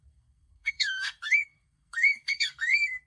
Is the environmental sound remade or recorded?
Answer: remade